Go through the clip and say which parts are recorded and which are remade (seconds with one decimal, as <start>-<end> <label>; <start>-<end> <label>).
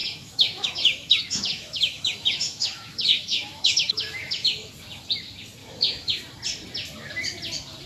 0.0-4.7 remade; 4.7-5.6 recorded; 5.6-6.2 remade; 6.2-7.9 recorded